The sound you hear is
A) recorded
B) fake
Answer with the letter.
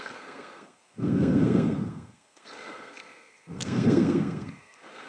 B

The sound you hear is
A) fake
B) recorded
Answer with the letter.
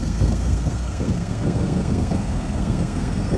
A